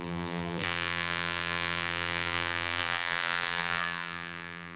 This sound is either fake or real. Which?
fake